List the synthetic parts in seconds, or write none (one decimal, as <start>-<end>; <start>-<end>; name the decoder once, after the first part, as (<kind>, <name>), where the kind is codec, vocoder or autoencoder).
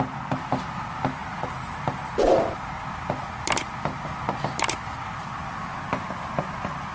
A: none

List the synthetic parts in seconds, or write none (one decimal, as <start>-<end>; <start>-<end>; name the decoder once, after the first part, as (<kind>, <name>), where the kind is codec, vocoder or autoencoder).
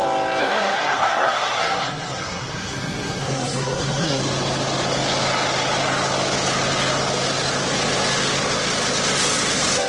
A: 0.4-4.2 (codec, SNAC)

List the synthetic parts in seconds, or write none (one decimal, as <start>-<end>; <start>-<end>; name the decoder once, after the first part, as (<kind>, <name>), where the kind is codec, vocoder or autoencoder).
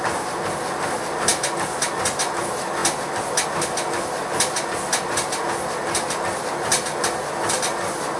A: none